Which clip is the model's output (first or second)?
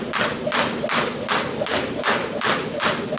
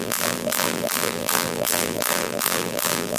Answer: second